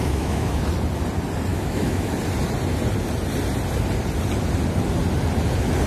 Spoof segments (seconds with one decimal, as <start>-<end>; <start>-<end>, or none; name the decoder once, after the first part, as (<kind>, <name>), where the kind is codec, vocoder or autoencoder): 0.0-0.6 (autoencoder, DAC-VAE); 1.5-2.1

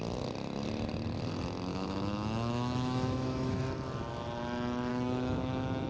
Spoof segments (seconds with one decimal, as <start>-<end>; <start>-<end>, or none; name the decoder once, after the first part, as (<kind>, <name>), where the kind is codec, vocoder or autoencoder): 1.7-3.6 (autoencoder, DAC-VAE); 4.9-5.9